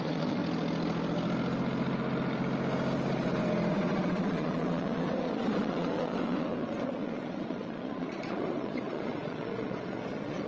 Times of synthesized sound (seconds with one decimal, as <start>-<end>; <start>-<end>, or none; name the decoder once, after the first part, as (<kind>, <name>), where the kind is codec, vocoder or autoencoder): 0.0-0.4 (vocoder, Vocos); 3.7-10.5